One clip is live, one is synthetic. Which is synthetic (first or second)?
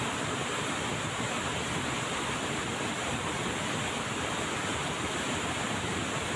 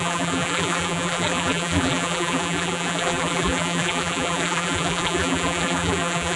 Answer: second